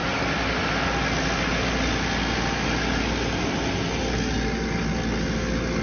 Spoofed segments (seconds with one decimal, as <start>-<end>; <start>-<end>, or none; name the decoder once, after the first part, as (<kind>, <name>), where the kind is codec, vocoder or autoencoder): none